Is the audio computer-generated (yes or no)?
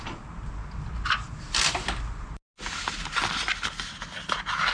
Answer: no